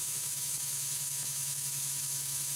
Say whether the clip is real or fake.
fake